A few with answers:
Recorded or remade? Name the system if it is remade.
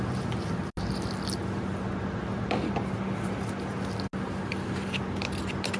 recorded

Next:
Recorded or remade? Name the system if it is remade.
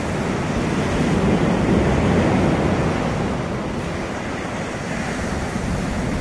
recorded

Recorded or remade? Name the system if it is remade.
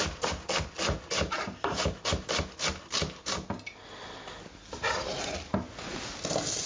recorded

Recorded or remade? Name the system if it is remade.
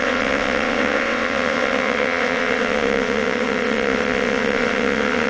remade, vocoder, WaveNeXt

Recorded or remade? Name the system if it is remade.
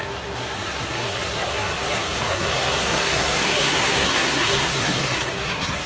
remade, codec, SNAC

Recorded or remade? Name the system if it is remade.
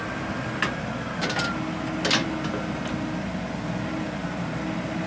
recorded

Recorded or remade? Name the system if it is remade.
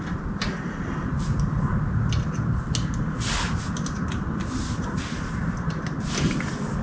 recorded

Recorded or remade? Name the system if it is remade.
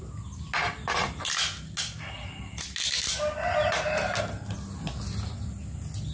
recorded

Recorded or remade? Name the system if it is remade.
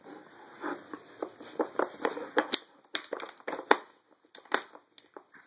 recorded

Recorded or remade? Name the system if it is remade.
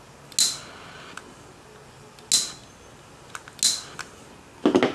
recorded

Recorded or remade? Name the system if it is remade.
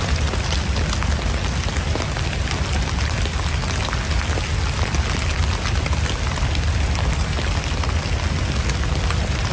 recorded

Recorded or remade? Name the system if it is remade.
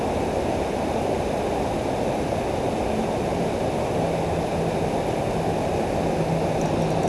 recorded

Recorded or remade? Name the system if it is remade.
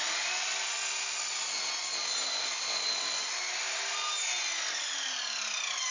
recorded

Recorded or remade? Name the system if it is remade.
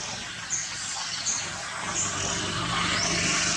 recorded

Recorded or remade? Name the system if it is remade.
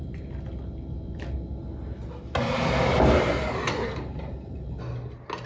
recorded